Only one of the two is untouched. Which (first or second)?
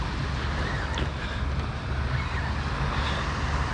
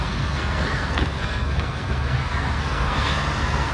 first